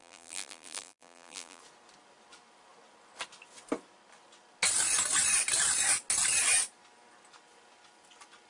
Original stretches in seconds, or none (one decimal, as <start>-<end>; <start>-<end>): 1.6-8.5